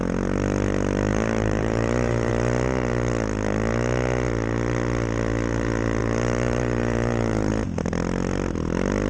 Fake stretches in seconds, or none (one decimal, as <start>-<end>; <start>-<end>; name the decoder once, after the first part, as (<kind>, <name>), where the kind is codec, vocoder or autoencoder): 1.1-2.3 (vocoder, BigVGAN v2); 6.0-7.5